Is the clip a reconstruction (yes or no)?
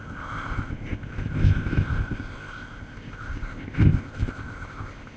yes